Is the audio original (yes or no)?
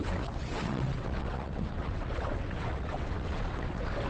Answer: no